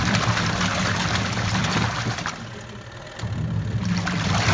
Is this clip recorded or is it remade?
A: recorded